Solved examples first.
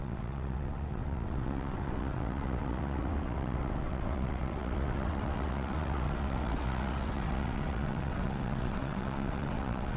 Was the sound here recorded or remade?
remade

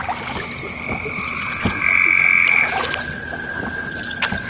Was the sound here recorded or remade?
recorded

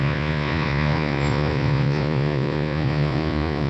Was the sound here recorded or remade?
remade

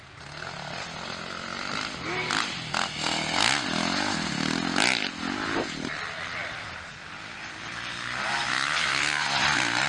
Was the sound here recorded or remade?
recorded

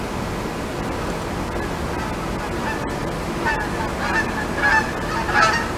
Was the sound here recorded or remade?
recorded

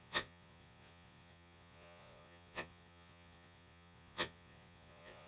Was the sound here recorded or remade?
remade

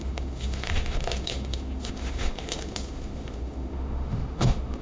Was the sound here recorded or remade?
remade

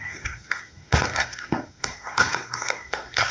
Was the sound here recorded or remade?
remade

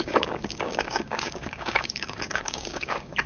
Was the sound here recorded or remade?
remade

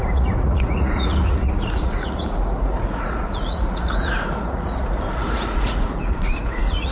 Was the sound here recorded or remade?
remade